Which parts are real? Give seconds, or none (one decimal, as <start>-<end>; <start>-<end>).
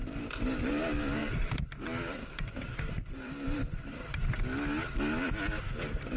0.7-1.2; 4.2-6.2